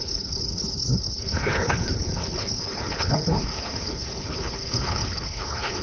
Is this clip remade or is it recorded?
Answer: remade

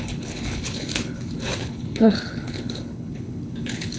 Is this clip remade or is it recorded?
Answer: remade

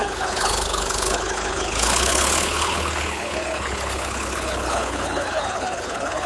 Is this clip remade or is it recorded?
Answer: remade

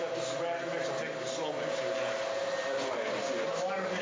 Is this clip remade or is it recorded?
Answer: recorded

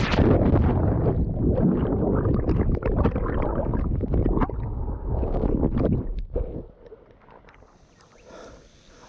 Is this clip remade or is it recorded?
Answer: recorded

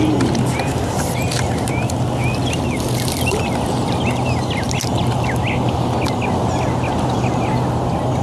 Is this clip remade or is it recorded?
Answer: recorded